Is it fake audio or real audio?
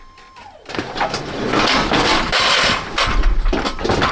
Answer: real